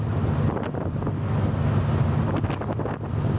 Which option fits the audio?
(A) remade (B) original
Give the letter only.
B